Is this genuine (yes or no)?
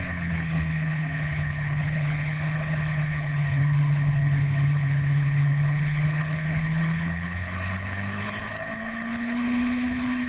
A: no